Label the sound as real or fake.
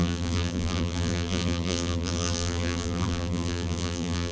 fake